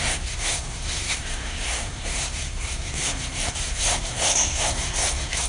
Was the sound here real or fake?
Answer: fake